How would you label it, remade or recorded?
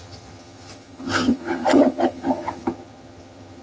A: remade